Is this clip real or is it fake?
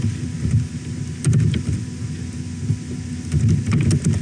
real